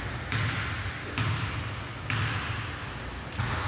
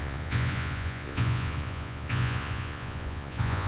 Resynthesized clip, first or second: second